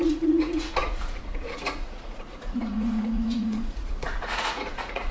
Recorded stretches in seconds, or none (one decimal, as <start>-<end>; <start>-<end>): none